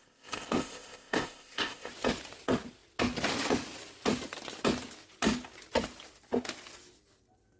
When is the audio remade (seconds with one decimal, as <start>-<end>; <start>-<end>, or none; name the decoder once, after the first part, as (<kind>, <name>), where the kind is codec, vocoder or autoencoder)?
0.0-1.9 (codec, ZipCodec)